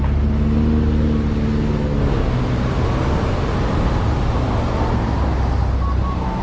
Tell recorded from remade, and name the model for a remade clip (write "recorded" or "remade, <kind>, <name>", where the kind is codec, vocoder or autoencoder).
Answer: recorded